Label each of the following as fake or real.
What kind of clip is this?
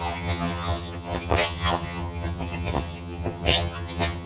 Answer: fake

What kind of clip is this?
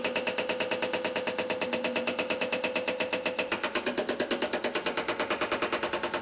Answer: real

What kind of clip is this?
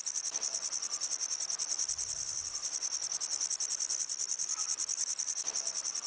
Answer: real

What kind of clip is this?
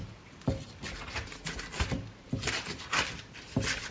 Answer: real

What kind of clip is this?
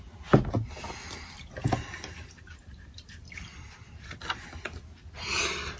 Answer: real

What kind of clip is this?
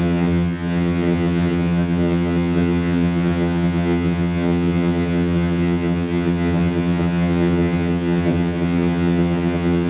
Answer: fake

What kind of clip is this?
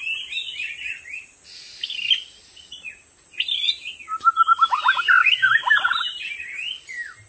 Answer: real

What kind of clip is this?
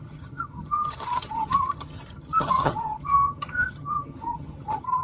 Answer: fake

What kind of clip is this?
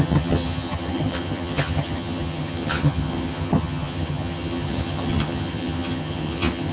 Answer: fake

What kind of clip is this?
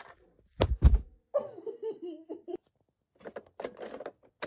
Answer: real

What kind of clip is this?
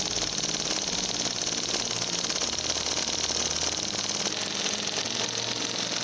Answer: real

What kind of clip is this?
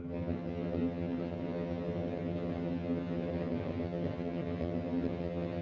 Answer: fake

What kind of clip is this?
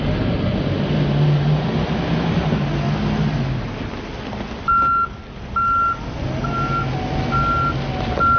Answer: real